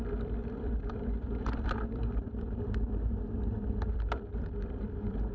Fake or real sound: fake